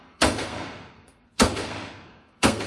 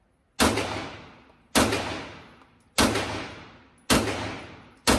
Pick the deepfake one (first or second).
first